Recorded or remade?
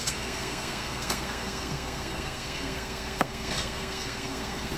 remade